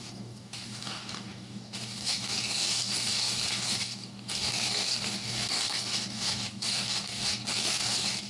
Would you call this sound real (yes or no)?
no